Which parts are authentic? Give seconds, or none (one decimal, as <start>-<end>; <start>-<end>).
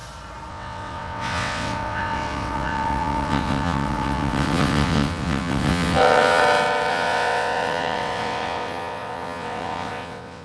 0.0-0.5; 6.4-6.9